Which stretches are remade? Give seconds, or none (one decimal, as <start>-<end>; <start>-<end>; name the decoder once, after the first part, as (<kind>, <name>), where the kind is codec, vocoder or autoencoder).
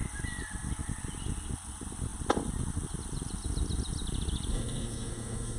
4.5-5.6 (codec, SNAC)